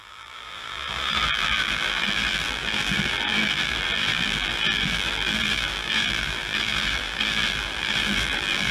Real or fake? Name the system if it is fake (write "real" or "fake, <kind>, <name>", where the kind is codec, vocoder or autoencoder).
fake, vocoder, BigVGAN v2